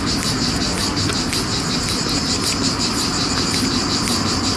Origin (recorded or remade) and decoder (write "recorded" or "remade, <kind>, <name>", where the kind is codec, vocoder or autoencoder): recorded